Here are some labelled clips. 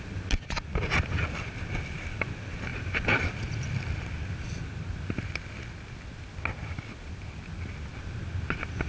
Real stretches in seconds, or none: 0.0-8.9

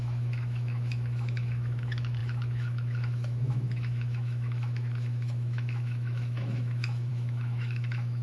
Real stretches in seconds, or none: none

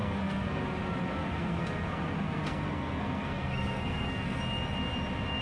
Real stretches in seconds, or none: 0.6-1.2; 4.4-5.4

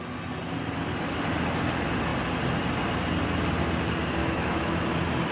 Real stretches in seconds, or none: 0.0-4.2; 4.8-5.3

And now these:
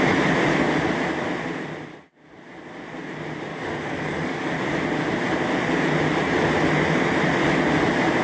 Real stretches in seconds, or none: 0.0-3.5; 4.5-8.2

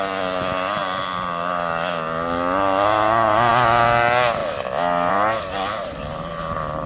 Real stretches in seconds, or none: 0.0-6.9

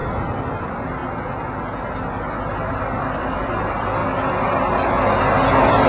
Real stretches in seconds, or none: 0.0-0.6; 1.0-2.7; 4.0-5.5

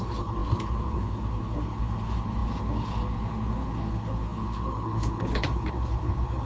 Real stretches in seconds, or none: none